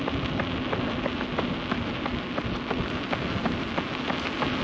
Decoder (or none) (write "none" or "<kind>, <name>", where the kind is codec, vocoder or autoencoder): none